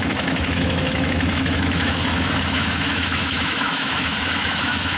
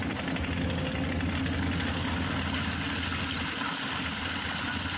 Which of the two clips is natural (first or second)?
second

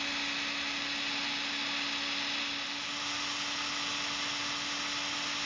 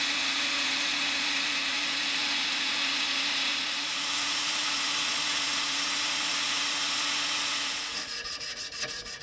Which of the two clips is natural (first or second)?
first